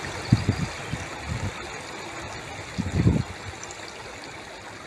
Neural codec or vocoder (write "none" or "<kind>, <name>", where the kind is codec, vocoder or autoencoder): none